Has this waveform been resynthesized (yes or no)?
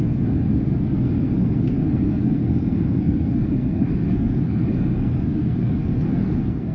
yes